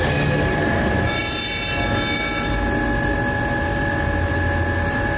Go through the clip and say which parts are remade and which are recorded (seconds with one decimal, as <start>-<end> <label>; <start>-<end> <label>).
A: 0.0-5.2 recorded